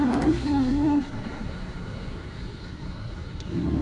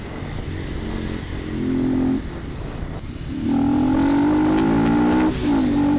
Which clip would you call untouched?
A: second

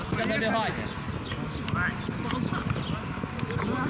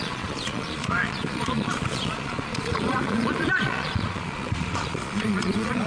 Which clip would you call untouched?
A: first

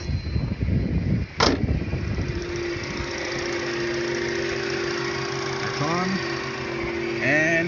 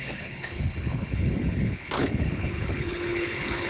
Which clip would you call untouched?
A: first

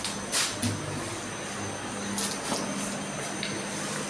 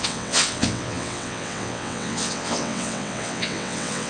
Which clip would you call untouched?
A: first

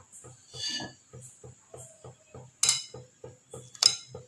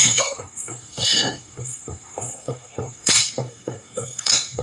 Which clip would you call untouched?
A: first